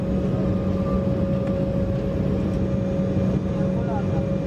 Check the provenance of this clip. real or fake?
real